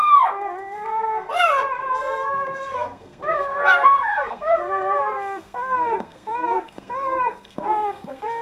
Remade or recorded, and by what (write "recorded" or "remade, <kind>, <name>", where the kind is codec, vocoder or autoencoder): remade, codec, SNAC